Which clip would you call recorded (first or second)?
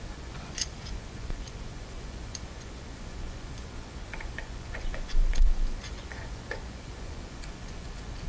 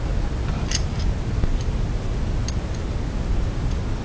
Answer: second